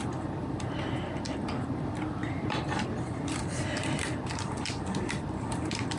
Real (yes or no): no